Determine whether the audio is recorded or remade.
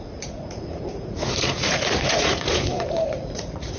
remade